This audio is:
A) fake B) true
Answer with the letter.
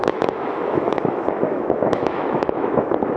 A